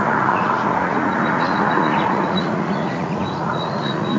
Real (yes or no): no